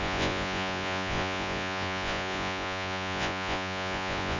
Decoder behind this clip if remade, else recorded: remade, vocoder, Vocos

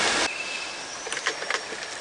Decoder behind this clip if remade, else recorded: recorded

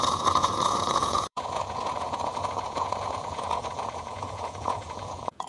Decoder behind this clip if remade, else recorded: remade, vocoder, Vocos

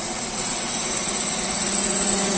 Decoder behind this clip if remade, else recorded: remade, vocoder, Vocos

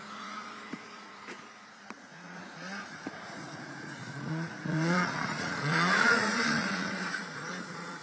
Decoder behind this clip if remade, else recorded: remade, vocoder, Vocos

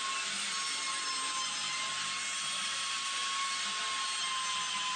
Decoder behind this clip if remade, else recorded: recorded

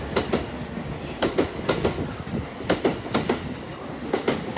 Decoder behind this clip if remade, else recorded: recorded